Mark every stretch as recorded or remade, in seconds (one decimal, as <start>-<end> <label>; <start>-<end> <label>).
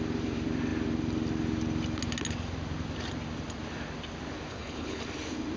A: 0.0-4.5 recorded; 4.5-5.0 remade; 5.0-5.6 recorded